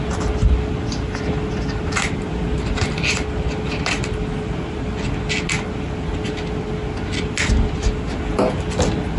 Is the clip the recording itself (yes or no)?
yes